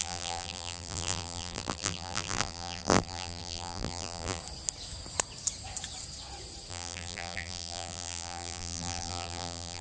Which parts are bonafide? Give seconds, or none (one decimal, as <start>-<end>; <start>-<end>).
4.4-6.7